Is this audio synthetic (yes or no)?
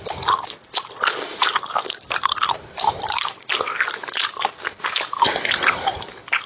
no